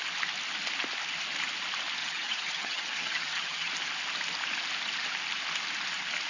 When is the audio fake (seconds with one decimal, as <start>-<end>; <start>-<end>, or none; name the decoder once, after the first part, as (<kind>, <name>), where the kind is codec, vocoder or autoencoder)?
2.0-3.7 (vocoder, HiFi-GAN)

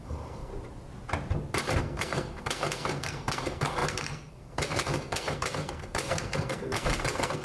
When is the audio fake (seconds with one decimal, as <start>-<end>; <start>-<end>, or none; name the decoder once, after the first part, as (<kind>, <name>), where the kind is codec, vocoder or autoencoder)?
0.0-0.5 (codec, SNAC); 1.8-7.4

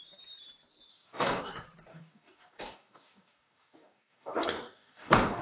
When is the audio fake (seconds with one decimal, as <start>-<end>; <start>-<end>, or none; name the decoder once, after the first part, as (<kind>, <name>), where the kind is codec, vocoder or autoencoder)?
0.9-1.5 (codec, DAC); 1.9-5.4

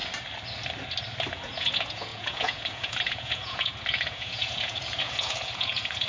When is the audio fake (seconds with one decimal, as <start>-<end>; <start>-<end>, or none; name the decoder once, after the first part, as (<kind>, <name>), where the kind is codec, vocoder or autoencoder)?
1.3-6.1 (vocoder, Vocos)

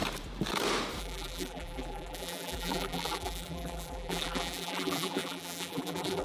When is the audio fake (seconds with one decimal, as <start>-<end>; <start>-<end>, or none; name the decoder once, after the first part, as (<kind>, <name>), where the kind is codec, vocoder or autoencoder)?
1.0-6.2 (vocoder, BigVGAN v2)

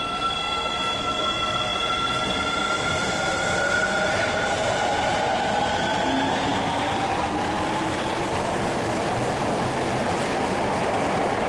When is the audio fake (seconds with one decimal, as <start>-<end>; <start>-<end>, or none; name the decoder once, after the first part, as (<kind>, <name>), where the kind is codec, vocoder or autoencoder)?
none

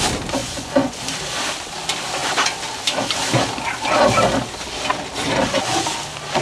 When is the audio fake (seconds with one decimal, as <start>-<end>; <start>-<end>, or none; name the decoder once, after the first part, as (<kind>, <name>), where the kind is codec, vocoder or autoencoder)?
0.4-1.0 (vocoder, Vocos)

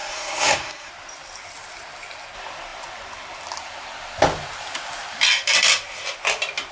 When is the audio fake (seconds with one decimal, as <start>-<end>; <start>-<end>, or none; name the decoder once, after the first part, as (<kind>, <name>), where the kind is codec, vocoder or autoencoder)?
0.0-0.9 (codec, SNAC)